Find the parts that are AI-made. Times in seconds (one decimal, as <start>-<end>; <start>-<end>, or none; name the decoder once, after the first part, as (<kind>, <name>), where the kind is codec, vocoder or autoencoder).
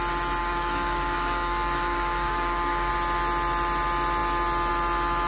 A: 0.4-2.9 (codec, DAC)